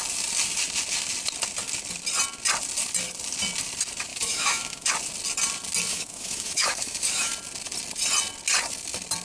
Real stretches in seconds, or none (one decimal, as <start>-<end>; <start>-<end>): 0.0-4.1; 4.9-5.9; 7.3-9.2